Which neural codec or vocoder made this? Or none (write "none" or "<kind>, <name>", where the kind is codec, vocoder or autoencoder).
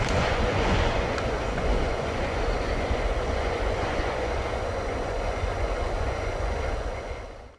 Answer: vocoder, Vocos